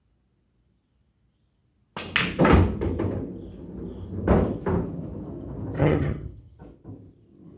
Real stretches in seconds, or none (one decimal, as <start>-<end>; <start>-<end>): 0.0-5.8; 6.6-7.6